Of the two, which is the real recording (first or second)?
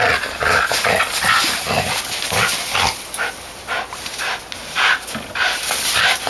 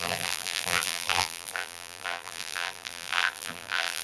first